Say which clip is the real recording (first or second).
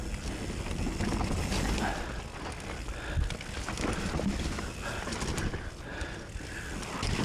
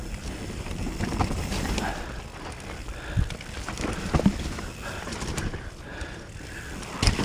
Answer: first